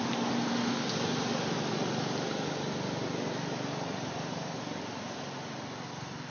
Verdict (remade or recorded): recorded